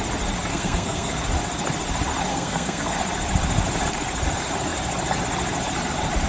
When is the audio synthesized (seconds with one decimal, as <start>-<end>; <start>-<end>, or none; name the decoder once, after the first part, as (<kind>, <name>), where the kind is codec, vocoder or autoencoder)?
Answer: 0.5-1.1 (codec, SNAC); 2.3-2.9